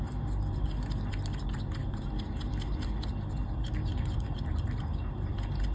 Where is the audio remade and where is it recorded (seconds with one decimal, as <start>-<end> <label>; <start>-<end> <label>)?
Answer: 0.0-5.7 recorded